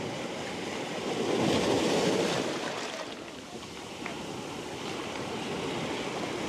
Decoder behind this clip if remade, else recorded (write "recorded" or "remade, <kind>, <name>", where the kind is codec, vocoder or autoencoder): recorded